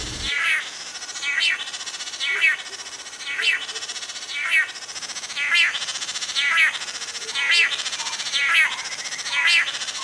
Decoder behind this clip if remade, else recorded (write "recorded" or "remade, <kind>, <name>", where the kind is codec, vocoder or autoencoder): recorded